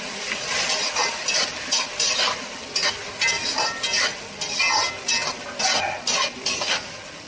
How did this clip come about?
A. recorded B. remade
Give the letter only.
A